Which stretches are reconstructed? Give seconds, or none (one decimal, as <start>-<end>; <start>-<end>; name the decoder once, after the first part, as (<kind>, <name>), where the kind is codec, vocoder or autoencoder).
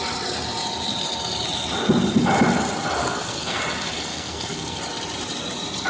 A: 3.0-3.6 (codec, SNAC); 4.1-4.8